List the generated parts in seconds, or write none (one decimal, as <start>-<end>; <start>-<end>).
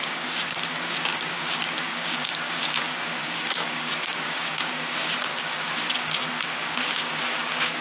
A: 0.0-7.8